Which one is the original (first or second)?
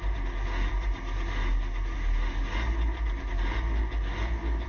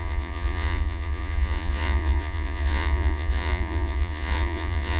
first